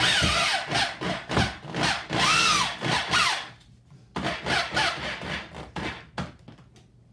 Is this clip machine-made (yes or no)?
no